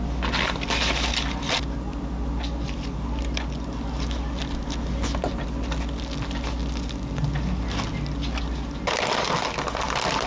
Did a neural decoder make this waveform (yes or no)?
no